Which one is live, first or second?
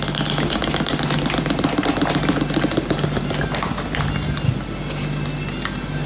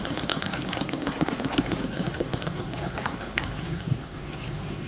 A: first